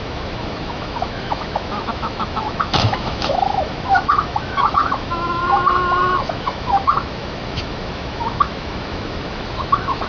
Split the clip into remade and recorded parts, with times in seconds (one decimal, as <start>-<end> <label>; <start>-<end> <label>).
0.0-5.4 remade; 5.4-6.2 recorded; 6.2-10.1 remade